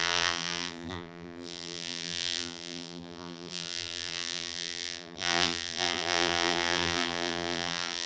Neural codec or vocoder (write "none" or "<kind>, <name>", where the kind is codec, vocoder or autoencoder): vocoder, BigVGAN v2